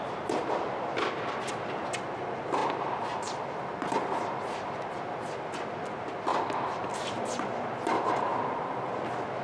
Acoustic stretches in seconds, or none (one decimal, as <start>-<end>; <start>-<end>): 0.0-2.6; 3.6-6.3; 7.1-8.3; 8.9-9.4